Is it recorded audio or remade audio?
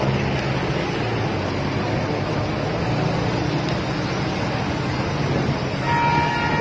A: recorded